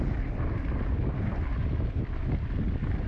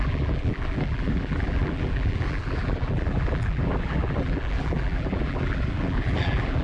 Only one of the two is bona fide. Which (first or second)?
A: first